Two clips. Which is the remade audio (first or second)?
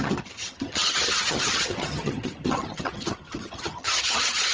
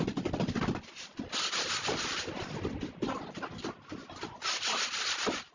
first